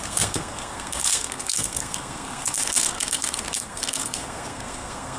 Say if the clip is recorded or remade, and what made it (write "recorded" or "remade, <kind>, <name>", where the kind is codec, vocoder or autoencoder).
remade, codec, SNAC